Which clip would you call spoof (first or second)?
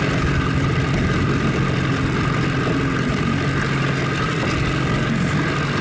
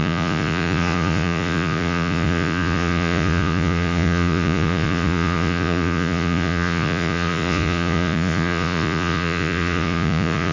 second